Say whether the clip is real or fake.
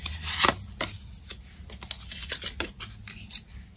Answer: real